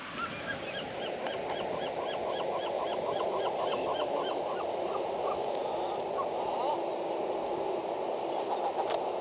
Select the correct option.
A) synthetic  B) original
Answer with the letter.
B